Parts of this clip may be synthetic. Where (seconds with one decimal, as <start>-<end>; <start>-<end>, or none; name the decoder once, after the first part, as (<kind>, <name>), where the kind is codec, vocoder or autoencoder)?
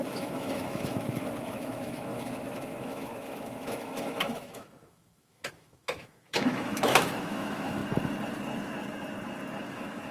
0.0-7.8 (autoencoder, DAC-VAE); 9.7-10.1